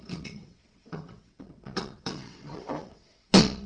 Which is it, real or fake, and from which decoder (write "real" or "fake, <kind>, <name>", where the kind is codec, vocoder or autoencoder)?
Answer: fake, vocoder, WaveNeXt